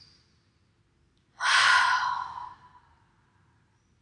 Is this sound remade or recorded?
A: recorded